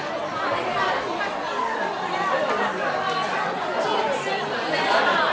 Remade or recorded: recorded